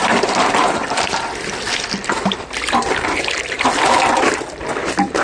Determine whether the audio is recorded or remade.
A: remade